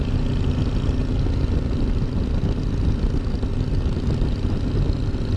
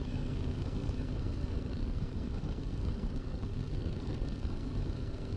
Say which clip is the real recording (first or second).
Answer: first